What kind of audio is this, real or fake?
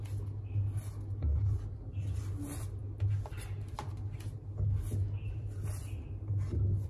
real